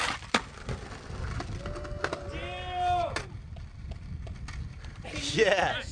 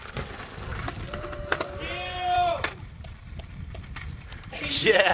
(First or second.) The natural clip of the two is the first